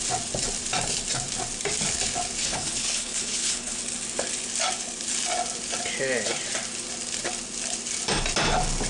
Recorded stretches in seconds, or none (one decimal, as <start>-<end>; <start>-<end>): 0.0-2.4; 3.8-8.9